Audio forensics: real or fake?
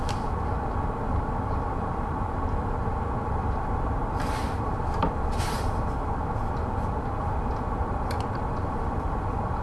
fake